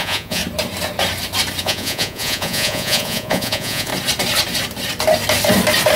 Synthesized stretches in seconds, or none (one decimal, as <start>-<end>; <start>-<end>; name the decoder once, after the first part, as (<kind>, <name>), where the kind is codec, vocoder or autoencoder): 0.0-0.4 (vocoder, Vocos); 1.6-3.9